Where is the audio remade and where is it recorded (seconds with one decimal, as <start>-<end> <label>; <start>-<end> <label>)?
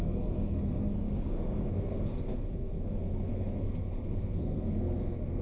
0.0-5.4 remade